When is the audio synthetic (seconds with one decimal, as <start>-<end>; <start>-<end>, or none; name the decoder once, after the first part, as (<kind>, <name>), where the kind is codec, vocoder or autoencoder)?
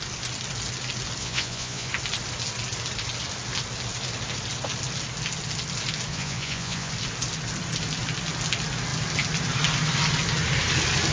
1.2-1.9 (vocoder, Vocos); 6.1-6.9